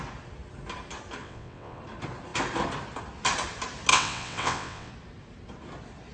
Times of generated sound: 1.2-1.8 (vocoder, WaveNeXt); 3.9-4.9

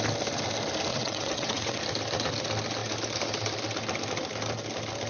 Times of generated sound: 0.9-1.8 (vocoder, WaveNeXt)

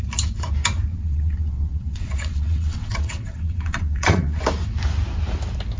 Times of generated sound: 0.9-4.4 (vocoder, WaveNeXt)

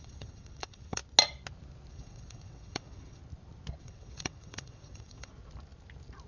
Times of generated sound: 0.0-1.0 (vocoder, WaveNeXt); 1.9-3.2; 3.8-5.3

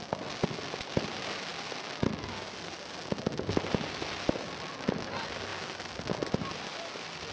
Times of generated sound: none

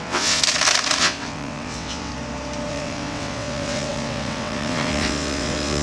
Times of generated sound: 0.0-0.4 (vocoder, WaveNeXt); 1.0-2.1; 2.7-5.8

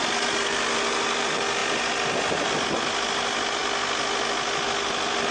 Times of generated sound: none